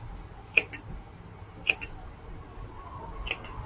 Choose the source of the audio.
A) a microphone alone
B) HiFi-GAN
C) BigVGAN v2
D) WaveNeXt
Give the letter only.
A